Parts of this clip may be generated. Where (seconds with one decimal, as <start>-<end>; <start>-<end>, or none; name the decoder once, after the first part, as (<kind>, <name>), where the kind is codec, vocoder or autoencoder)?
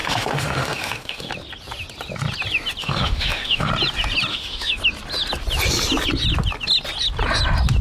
0.0-1.3 (autoencoder, DAC-VAE); 2.8-3.7; 4.3-4.8